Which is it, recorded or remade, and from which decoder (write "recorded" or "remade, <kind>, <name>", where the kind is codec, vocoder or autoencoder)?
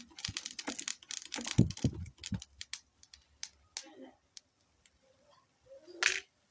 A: recorded